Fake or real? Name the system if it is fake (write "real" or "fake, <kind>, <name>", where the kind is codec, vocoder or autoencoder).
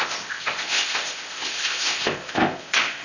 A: fake, codec, ZipCodec